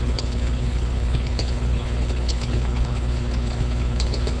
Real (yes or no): no